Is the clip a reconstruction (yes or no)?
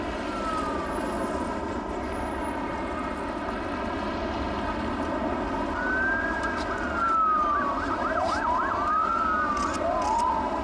no